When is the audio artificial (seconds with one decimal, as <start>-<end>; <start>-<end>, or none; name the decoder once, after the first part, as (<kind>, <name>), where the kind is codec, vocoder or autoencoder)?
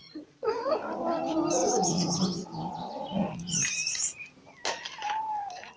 0.0-0.8 (vocoder, Vocos); 1.6-2.2; 3.1-3.6